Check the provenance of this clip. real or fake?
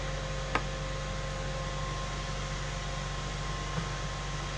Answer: real